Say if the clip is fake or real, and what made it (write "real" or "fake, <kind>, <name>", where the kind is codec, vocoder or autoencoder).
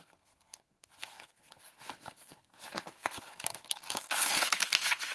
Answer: fake, codec, SNAC